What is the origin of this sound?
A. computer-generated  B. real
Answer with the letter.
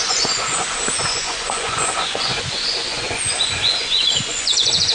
A